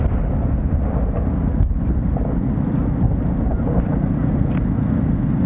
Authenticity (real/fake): real